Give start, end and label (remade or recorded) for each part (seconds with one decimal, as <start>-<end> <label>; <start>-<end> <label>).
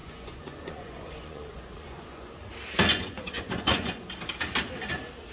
0.0-2.3 remade; 2.3-2.9 recorded; 2.9-4.1 remade; 4.1-5.3 recorded